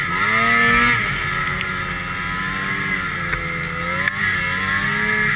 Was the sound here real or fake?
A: real